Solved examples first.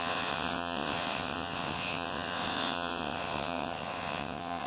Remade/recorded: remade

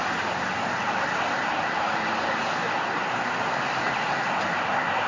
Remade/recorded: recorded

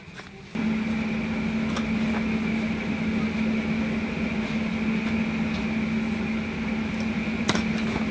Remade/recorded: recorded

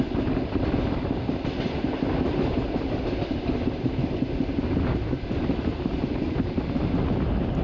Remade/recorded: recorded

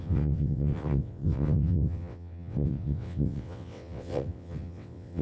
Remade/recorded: remade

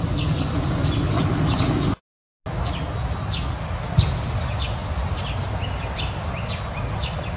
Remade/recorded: recorded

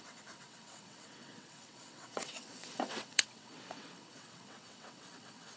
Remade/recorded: remade